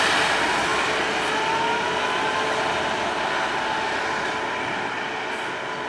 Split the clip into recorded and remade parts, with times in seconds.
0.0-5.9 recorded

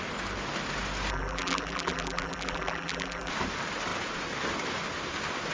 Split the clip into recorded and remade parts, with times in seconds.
0.0-1.1 recorded; 1.1-3.3 remade; 3.3-5.5 recorded

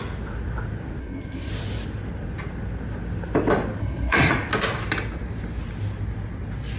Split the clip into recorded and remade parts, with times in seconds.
0.0-1.0 recorded; 1.0-1.5 remade; 1.5-3.8 recorded; 3.8-4.3 remade; 4.3-6.8 recorded

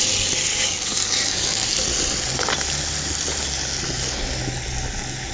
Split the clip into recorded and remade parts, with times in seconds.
0.0-0.5 recorded; 0.5-1.7 remade; 1.7-5.3 recorded